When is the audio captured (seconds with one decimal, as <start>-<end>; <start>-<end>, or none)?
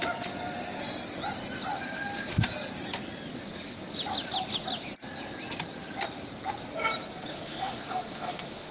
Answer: 0.0-7.3